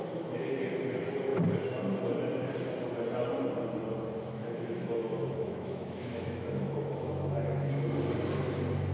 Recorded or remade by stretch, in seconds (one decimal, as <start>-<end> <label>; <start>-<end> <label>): 0.0-4.4 recorded; 4.4-7.7 remade; 7.7-8.9 recorded